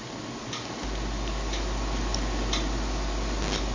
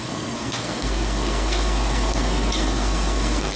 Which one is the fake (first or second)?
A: second